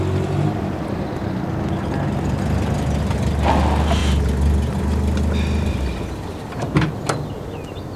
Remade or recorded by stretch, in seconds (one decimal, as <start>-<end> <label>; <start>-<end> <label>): 0.0-8.0 recorded